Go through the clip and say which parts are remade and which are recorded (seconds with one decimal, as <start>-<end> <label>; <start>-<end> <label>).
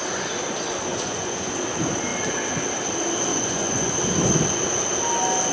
0.0-0.9 recorded; 0.9-1.5 remade; 1.5-3.3 recorded; 3.3-3.9 remade; 3.9-5.5 recorded